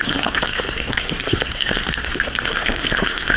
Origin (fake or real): fake